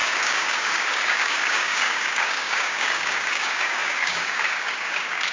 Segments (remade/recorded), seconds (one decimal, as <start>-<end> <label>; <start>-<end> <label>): 0.0-5.3 remade